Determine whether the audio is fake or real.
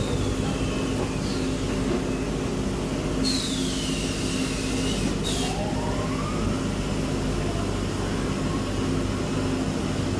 real